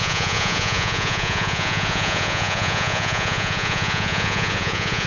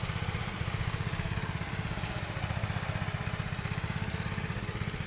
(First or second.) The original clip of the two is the second